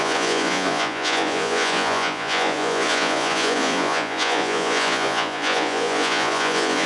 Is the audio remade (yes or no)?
yes